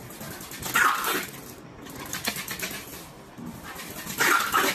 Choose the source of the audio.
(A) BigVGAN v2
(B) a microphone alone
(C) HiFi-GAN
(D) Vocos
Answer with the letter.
B